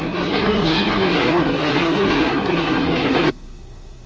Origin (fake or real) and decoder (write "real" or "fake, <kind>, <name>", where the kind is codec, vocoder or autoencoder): fake, codec, SNAC